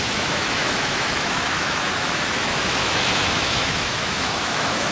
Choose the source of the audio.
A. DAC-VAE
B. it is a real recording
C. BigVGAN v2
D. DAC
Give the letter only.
A